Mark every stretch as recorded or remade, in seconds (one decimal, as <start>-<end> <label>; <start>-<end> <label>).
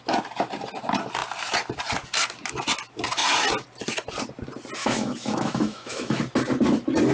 0.0-4.8 recorded; 4.8-6.2 remade; 6.2-7.1 recorded